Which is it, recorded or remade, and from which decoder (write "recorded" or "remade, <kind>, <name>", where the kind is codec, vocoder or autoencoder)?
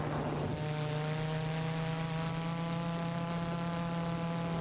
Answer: recorded